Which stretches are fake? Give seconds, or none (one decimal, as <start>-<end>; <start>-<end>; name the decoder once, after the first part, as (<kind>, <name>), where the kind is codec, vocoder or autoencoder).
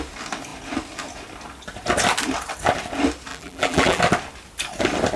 3.3-4.0 (vocoder, BigVGAN v2)